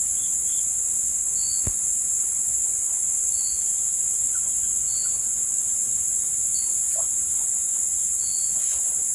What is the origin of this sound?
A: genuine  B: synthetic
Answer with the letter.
B